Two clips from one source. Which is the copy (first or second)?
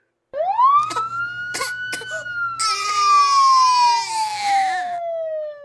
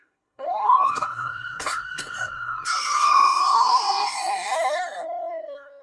second